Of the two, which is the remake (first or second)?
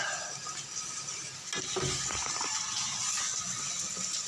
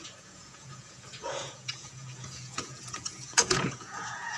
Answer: second